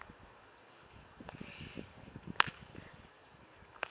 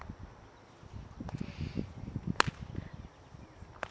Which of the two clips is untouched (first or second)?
second